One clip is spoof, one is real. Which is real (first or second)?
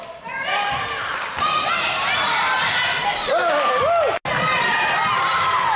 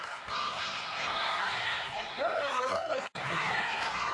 first